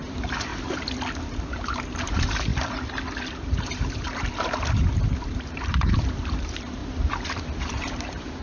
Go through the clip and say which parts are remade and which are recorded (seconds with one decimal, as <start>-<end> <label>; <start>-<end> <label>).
0.0-0.5 remade; 0.5-1.5 recorded; 1.5-2.5 remade; 2.5-3.6 recorded; 3.6-6.8 remade; 6.8-7.6 recorded; 7.6-8.4 remade